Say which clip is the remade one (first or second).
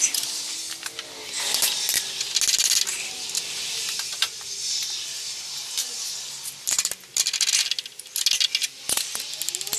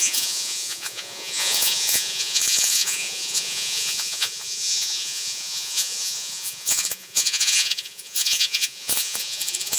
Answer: second